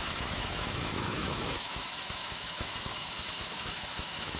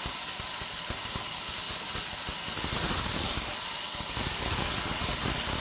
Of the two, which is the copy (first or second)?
first